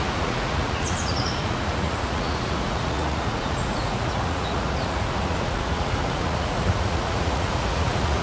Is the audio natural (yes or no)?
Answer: no